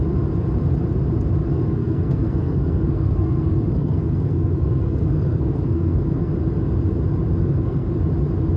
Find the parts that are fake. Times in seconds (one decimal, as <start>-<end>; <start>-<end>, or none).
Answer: 1.5-6.3; 7.4-7.9